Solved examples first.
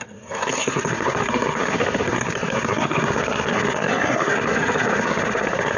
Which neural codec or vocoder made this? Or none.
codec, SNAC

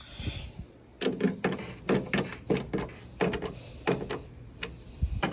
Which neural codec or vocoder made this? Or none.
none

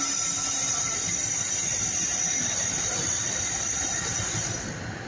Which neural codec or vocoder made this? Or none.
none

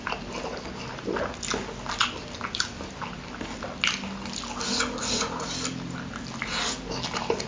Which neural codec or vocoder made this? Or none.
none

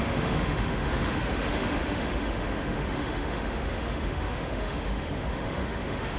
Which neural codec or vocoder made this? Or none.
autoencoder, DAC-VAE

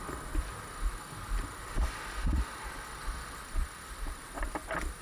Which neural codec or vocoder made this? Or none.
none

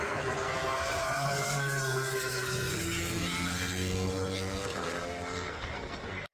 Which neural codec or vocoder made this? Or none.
codec, SNAC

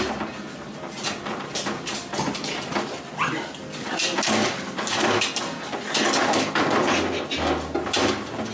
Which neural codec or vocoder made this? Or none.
none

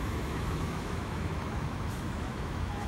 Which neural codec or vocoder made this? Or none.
autoencoder, DAC-VAE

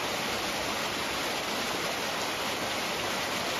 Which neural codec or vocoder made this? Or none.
none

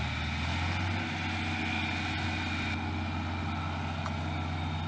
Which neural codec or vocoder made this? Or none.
none